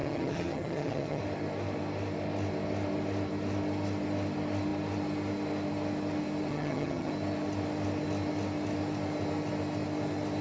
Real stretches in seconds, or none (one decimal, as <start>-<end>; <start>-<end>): 1.2-6.5; 7.1-10.4